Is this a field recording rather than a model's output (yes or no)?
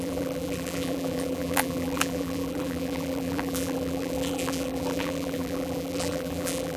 no